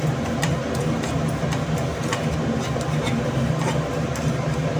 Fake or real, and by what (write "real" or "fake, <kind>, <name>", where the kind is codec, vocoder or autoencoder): real